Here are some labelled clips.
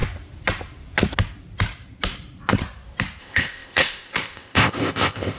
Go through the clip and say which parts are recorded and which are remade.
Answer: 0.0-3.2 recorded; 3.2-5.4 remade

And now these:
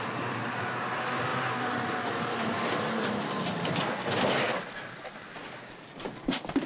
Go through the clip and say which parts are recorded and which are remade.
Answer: 0.0-6.7 recorded